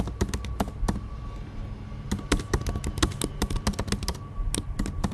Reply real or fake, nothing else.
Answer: real